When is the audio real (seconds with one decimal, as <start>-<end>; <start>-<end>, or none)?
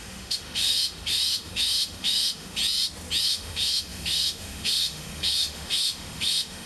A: 2.6-3.2